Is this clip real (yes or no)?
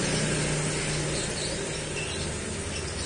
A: yes